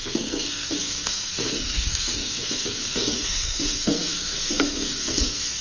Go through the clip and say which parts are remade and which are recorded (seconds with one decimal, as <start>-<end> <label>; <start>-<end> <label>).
0.0-5.6 remade